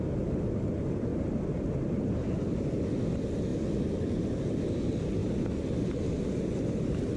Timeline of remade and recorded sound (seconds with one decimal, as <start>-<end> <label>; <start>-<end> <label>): 0.0-7.2 recorded